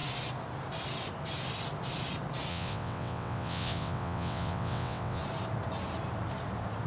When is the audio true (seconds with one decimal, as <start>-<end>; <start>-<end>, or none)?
0.0-2.5; 5.2-6.9